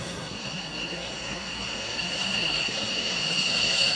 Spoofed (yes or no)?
yes